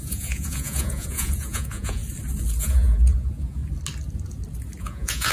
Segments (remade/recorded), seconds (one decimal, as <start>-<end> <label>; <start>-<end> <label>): 0.0-2.0 remade; 2.0-2.6 recorded; 2.6-3.6 remade; 3.6-4.8 recorded; 4.8-5.3 remade